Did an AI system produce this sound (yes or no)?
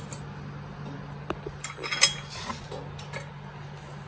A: no